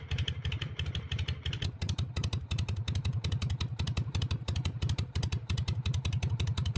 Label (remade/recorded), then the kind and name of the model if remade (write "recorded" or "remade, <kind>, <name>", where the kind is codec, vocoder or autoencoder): remade, vocoder, BigVGAN v2